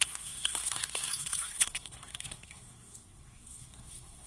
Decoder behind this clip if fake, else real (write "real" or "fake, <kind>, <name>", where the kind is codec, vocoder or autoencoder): fake, codec, SNAC